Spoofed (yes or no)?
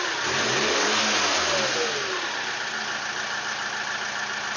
no